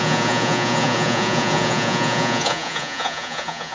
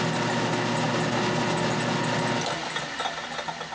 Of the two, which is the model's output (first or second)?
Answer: first